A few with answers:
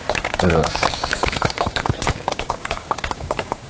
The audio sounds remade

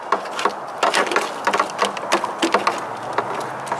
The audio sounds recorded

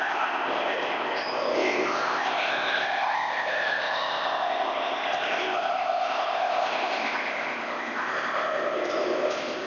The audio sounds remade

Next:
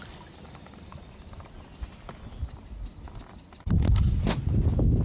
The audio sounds recorded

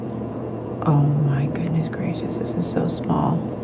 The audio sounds remade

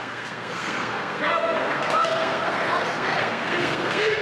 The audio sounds remade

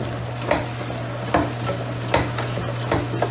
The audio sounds recorded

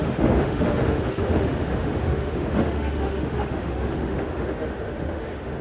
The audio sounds remade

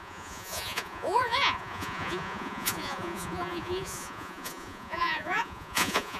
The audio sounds remade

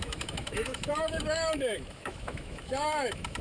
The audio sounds remade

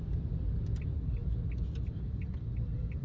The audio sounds recorded